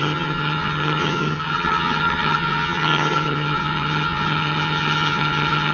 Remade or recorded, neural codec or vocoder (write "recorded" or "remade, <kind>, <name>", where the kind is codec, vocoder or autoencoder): remade, vocoder, HiFi-GAN